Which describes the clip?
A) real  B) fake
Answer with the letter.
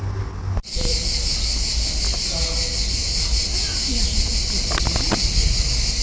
A